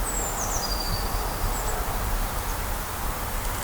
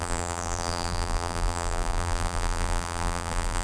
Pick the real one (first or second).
first